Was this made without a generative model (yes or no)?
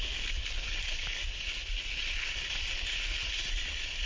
yes